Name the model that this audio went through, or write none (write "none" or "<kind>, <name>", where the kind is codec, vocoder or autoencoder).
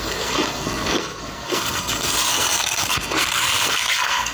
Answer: codec, SNAC